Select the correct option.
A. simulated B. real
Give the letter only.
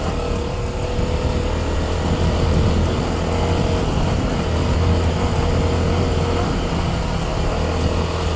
B